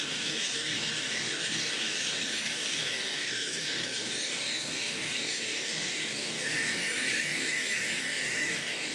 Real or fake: fake